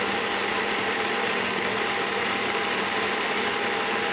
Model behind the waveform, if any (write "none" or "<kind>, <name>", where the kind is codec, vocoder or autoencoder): none